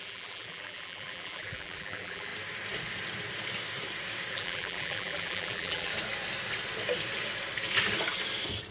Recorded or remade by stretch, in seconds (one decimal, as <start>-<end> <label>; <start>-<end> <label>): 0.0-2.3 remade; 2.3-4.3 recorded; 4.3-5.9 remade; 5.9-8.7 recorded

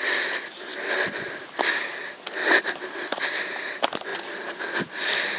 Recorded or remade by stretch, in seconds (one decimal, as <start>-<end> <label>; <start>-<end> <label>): 0.0-0.7 recorded; 0.7-1.4 remade; 1.4-4.1 recorded; 4.1-4.6 remade; 4.6-5.4 recorded

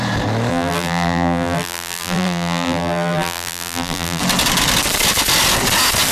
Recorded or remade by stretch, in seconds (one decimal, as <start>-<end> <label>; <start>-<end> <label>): 0.0-0.5 recorded; 0.5-4.2 remade; 4.2-6.1 recorded